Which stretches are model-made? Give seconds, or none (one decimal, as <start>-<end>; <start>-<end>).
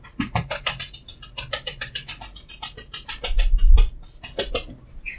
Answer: 0.0-3.6; 4.5-5.2